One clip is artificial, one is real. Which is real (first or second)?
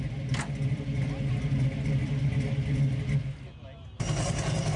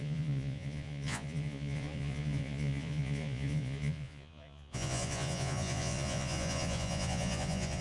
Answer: first